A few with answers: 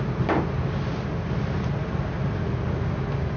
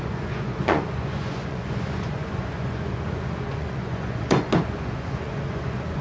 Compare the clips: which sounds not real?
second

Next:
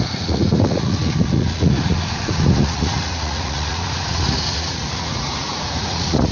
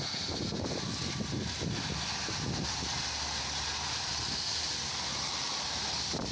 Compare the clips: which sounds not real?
first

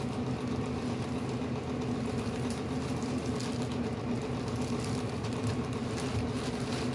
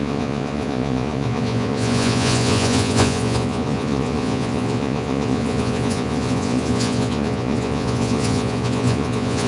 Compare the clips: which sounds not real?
second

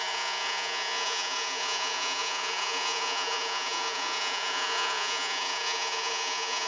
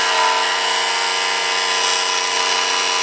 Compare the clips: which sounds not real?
first